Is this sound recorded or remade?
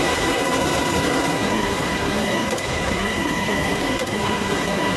remade